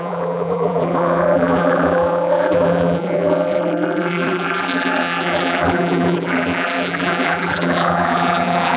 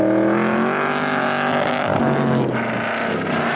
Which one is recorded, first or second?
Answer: second